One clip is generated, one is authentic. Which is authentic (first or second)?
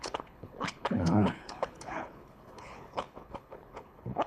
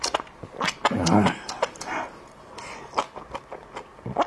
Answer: second